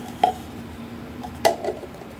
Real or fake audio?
fake